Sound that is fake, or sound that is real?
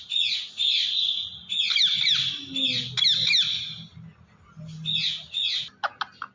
real